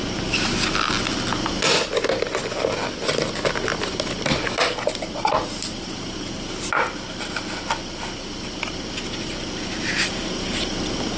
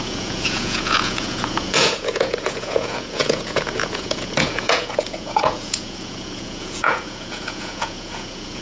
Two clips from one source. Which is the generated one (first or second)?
second